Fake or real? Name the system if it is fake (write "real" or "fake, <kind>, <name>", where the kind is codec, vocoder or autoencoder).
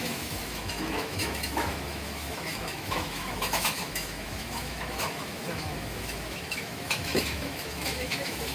fake, autoencoder, DAC-VAE